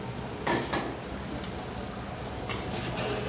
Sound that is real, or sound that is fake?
real